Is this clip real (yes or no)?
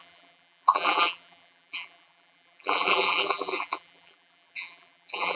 no